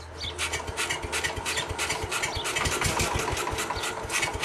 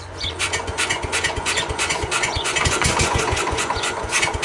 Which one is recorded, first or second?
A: first